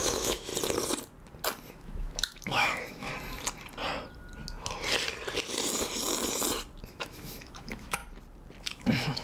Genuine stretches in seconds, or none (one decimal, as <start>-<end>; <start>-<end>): 0.5-1.7; 3.1-6.9; 8.0-8.6